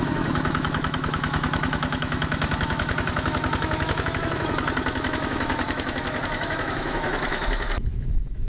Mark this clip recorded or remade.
remade